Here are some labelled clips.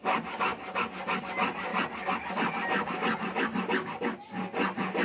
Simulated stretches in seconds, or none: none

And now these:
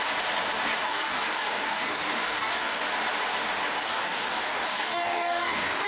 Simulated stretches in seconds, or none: 0.8-2.8 (codec, DAC); 3.8-5.9

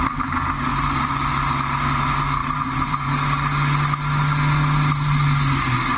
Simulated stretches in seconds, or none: 0.7-1.3 (vocoder, BigVGAN v2); 2.4-3.1

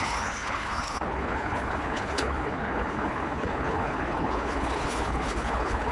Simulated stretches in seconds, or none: 0.0-5.9 (codec, HILCodec)

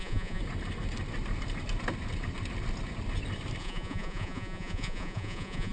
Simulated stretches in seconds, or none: 0.0-0.4 (vocoder, Vocos); 3.6-5.7

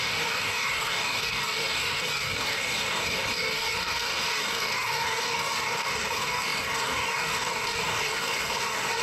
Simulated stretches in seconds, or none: 0.0-9.0 (codec, DAC)